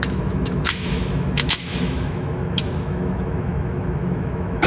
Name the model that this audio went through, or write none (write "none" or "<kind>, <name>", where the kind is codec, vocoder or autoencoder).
autoencoder, DAC-VAE